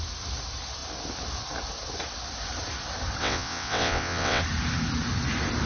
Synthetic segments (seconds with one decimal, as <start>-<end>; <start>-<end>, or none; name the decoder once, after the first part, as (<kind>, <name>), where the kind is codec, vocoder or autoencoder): 3.2-4.4 (vocoder, WaveNeXt)